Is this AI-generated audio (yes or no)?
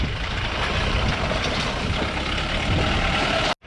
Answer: no